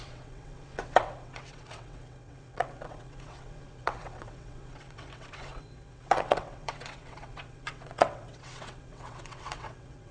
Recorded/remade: remade